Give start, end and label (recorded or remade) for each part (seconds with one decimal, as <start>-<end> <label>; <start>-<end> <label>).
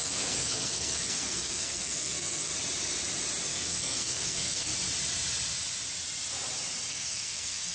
0.0-2.5 remade; 2.5-3.5 recorded; 3.5-4.7 remade; 4.7-6.9 recorded; 6.9-7.7 remade